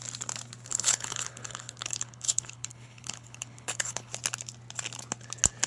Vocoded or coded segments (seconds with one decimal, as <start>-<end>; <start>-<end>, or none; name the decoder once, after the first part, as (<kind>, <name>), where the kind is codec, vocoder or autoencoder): 0.7-4.1 (codec, HILCodec)